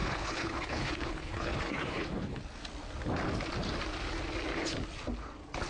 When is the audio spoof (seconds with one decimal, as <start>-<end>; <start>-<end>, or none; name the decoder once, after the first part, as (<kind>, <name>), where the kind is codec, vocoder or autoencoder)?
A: 0.0-2.4 (codec, HILCodec)